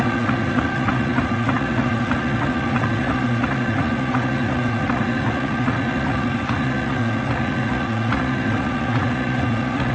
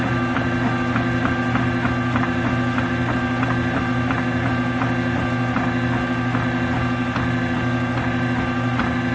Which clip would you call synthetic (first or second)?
first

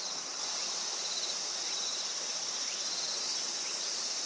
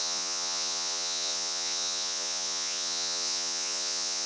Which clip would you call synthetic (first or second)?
second